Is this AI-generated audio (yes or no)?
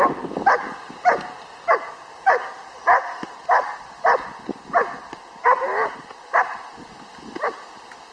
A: no